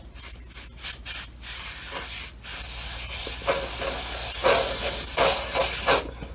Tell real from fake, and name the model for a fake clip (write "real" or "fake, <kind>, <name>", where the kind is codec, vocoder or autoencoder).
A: real